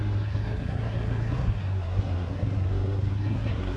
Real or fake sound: fake